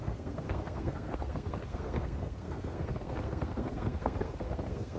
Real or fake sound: fake